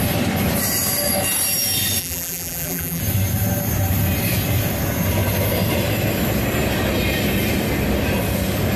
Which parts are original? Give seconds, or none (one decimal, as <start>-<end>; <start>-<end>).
0.0-2.0; 3.0-8.8